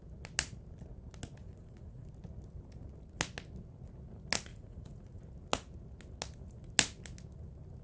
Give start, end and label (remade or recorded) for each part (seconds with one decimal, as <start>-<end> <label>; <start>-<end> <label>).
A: 0.0-1.4 recorded; 1.4-2.1 remade; 2.1-4.5 recorded; 4.5-5.2 remade; 5.2-7.8 recorded